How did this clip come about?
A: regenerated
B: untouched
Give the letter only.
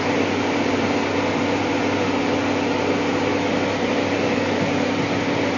B